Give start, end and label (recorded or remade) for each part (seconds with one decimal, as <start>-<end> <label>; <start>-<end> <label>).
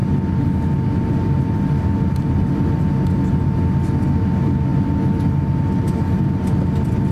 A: 0.0-7.1 recorded